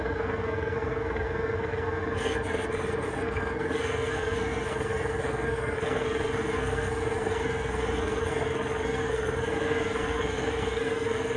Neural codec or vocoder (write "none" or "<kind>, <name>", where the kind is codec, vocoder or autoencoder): codec, SNAC